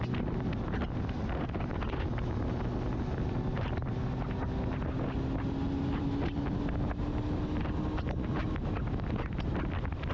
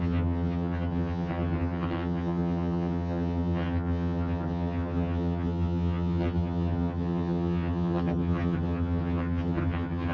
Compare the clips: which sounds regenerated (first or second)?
second